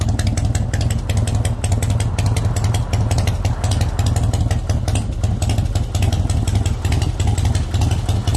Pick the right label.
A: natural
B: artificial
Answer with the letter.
A